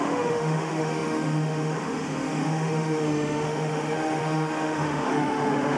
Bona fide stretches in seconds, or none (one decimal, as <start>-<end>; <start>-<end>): none